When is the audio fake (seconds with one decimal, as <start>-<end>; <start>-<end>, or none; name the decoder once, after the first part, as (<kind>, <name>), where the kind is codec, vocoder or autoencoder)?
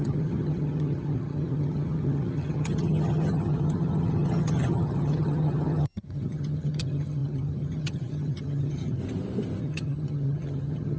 0.0-9.0 (vocoder, HiFi-GAN); 9.6-11.0